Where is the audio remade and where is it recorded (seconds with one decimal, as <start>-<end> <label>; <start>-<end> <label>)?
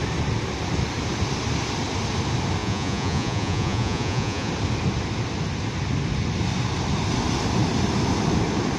0.0-2.6 recorded; 2.6-4.5 remade; 4.5-8.8 recorded